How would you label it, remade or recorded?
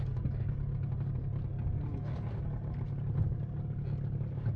recorded